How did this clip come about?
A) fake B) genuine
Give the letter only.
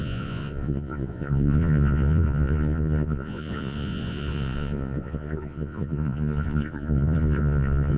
A